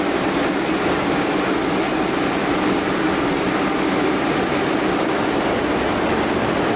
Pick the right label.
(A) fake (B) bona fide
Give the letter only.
B